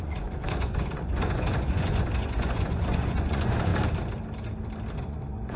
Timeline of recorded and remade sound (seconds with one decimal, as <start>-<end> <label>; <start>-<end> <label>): 0.0-3.7 remade; 3.7-5.0 recorded; 5.0-5.6 remade